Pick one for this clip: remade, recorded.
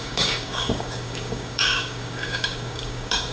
remade